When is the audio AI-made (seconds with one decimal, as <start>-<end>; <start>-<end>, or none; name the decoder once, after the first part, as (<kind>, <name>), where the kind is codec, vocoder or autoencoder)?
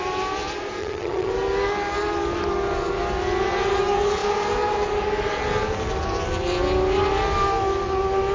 0.8-1.3 (vocoder, HiFi-GAN)